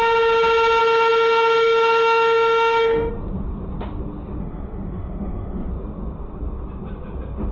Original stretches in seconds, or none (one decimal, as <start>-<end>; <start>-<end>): 0.0-0.8; 3.1-4.4; 5.7-7.5